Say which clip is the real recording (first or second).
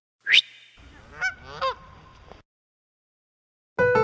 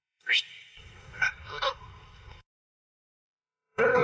first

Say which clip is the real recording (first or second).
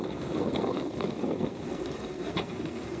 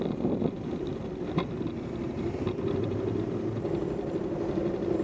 second